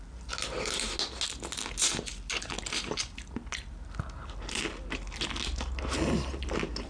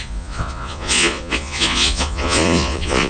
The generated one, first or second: second